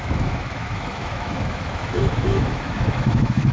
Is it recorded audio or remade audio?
remade